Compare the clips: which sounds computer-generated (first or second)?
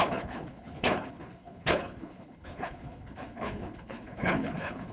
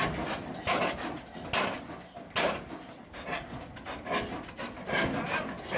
first